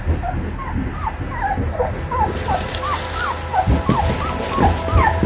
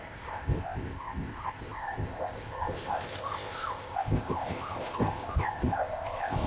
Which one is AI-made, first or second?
second